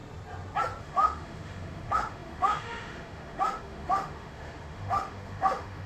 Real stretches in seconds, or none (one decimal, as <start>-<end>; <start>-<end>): 0.0-0.8